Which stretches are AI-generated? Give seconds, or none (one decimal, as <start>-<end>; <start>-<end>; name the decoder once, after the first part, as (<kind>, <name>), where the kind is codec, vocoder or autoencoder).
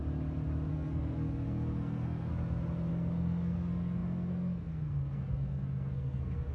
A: 0.7-2.3 (codec, SNAC); 2.9-6.5